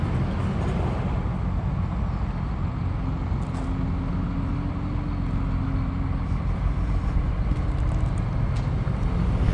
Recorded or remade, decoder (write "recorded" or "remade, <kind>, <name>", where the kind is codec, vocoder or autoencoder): recorded